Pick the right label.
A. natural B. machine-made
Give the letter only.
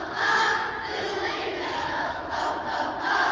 B